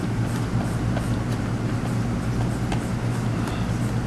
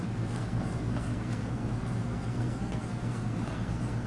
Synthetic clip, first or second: second